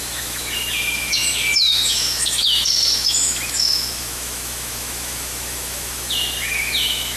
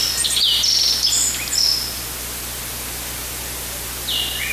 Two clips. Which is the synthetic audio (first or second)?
first